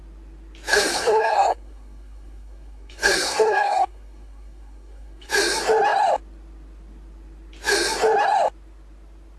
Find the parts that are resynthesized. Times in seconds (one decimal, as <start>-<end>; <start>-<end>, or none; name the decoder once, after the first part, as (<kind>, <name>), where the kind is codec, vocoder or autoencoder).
0.7-5.3 (codec, SNAC)